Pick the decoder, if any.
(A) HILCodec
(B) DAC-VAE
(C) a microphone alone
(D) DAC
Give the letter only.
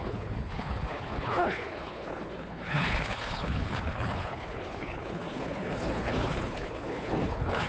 A